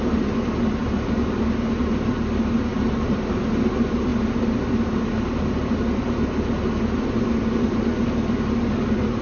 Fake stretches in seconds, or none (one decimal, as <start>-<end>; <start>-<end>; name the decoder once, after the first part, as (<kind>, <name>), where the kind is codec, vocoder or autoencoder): 0.8-1.5 (vocoder, BigVGAN v2); 2.7-3.4; 4.1-5.5